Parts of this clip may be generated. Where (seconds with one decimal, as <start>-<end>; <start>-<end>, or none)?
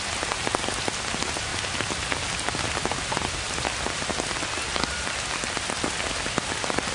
none